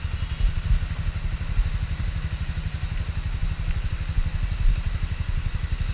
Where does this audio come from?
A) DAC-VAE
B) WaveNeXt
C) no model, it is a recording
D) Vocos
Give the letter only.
C